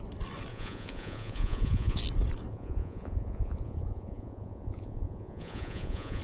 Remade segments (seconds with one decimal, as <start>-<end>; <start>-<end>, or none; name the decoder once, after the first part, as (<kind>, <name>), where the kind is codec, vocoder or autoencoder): 0.5-2.0 (vocoder, Vocos); 2.5-6.2